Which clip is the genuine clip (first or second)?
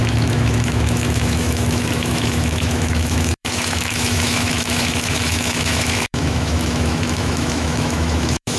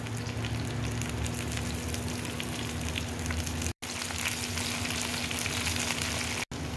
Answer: second